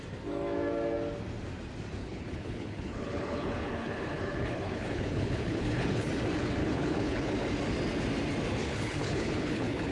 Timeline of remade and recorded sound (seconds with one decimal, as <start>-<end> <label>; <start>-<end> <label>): 0.0-2.0 recorded; 2.0-6.1 remade; 6.1-6.6 recorded; 6.6-7.3 remade; 7.3-8.6 recorded; 8.6-9.9 remade